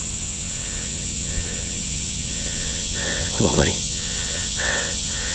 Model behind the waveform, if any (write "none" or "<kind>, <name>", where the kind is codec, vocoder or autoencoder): vocoder, WaveNeXt